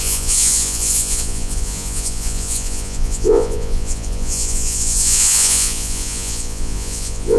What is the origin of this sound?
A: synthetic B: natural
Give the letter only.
A